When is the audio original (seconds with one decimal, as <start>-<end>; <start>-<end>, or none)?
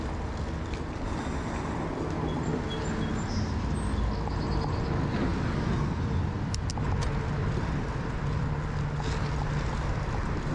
0.0-5.3; 6.7-7.4; 8.5-10.5